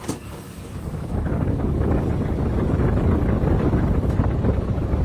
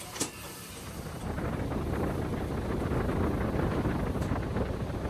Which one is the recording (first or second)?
second